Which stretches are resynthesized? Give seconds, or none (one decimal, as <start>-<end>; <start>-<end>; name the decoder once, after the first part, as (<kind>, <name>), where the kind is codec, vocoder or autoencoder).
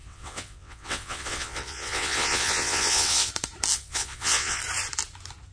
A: 0.0-3.3 (vocoder, WaveNeXt); 3.7-4.6